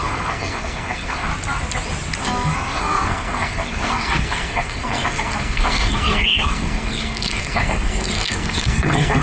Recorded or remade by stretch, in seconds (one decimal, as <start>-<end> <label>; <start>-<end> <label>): 0.0-1.3 remade; 1.3-2.2 recorded; 2.2-9.2 remade